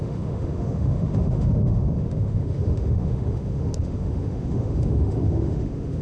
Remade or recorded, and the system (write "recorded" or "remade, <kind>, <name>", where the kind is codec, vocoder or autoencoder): remade, autoencoder, DAC-VAE